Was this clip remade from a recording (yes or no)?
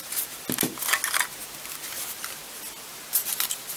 no